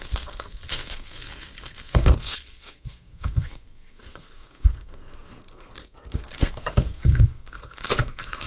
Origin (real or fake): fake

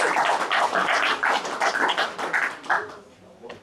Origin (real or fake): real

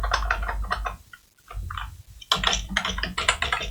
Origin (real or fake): real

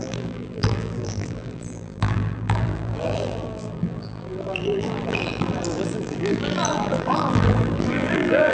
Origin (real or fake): fake